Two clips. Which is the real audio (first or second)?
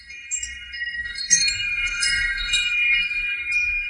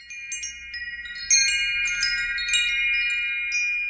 second